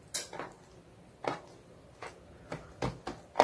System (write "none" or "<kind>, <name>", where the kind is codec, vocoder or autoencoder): none